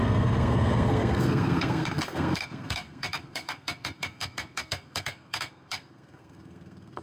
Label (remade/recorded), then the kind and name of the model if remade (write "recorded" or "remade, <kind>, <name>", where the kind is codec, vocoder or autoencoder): remade, codec, SNAC